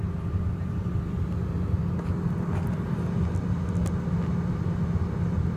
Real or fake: real